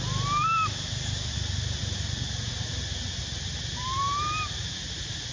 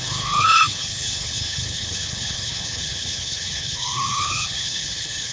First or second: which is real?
first